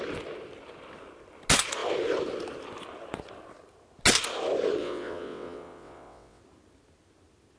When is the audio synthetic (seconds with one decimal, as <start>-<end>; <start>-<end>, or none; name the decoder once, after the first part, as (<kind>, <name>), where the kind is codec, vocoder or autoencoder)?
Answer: 4.8-6.4 (vocoder, WaveNeXt)